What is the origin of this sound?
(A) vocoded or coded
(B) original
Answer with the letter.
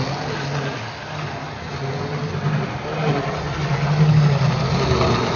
B